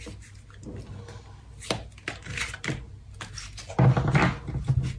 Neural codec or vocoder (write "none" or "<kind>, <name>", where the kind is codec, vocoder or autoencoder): none